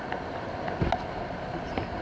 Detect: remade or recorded recorded